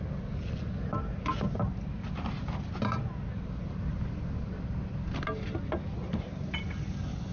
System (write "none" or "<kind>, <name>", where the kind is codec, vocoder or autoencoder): none